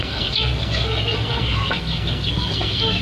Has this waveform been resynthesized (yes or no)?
yes